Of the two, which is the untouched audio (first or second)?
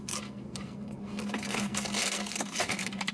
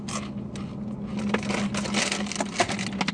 second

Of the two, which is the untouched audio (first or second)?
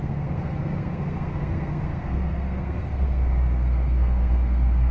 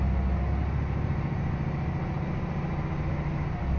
second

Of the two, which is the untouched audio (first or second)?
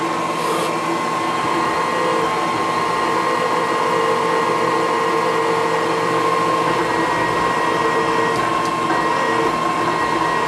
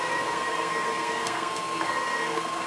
first